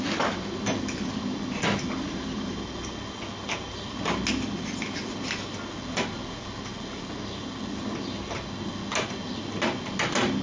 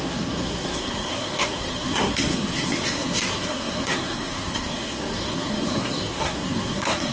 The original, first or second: first